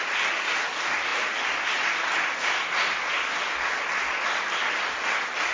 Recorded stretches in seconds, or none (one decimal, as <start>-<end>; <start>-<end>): 0.0-5.5